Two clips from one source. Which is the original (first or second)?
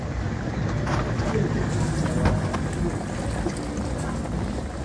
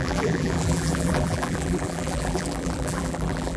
first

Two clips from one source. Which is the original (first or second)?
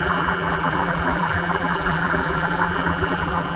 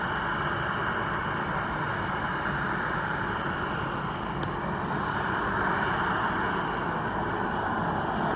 second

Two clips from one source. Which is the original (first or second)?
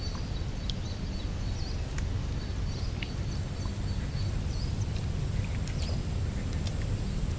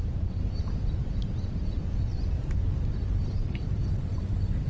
first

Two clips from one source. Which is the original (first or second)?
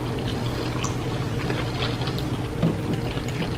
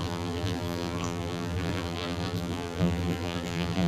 first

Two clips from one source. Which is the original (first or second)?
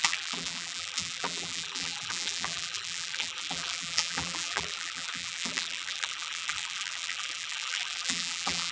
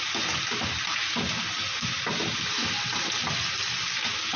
second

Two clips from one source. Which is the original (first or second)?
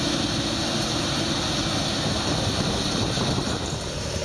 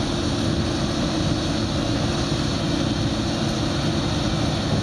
second